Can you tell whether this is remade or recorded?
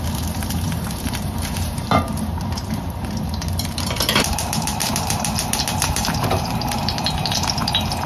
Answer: remade